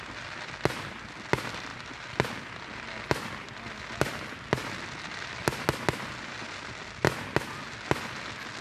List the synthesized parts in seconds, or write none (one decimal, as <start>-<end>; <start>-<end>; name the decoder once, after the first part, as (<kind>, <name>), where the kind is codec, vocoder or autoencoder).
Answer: none